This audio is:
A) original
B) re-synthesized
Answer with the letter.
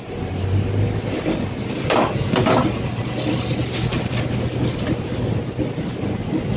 A